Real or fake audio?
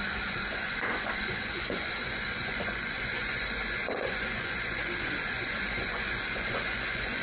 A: fake